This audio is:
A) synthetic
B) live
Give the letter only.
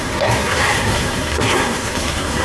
A